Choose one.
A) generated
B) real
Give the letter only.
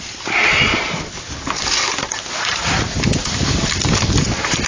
B